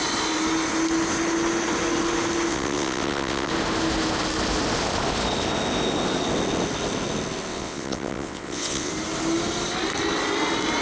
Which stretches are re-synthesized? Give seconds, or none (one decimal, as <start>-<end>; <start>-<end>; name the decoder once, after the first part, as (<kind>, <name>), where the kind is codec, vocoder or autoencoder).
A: 2.5-3.5 (vocoder, WaveNeXt); 7.5-8.9